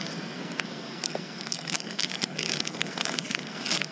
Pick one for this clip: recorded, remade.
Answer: remade